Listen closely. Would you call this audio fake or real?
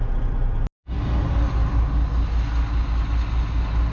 real